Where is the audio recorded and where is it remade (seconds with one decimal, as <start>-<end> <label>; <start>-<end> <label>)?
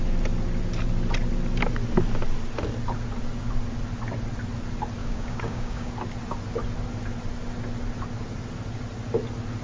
0.0-5.0 recorded; 5.0-5.9 remade; 5.9-9.6 recorded